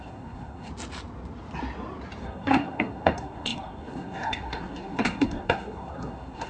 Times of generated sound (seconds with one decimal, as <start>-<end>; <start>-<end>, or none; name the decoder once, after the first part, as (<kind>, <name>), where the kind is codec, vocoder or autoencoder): 0.0-0.7 (codec, SNAC); 2.2-6.5